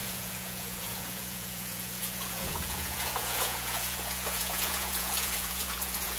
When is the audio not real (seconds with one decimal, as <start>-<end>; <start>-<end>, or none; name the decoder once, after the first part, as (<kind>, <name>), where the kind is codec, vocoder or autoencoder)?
0.0-6.2 (vocoder, Vocos)